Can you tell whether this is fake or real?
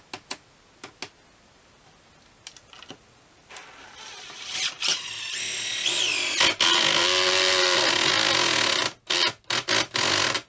real